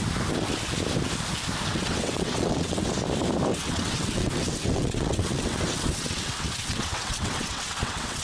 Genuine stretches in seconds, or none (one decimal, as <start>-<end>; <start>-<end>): 0.0-1.7; 2.9-3.5